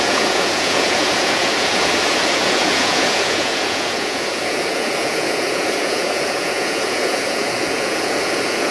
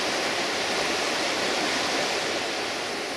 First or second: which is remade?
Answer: first